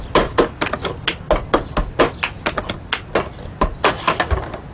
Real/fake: real